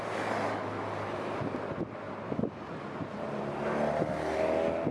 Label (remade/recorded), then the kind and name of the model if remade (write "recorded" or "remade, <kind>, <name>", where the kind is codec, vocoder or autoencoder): recorded